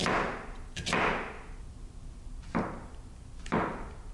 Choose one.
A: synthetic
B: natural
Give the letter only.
B